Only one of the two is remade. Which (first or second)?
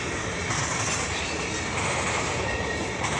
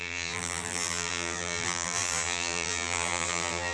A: second